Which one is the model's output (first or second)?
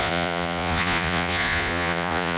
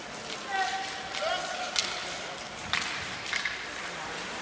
first